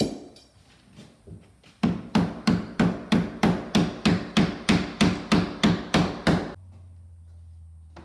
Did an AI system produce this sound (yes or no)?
no